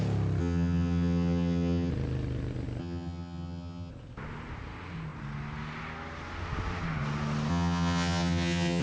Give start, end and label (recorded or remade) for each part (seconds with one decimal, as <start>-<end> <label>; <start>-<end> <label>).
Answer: 0.0-0.4 recorded; 0.4-1.9 remade; 1.9-2.8 recorded; 2.8-3.9 remade; 3.9-7.5 recorded; 7.5-8.8 remade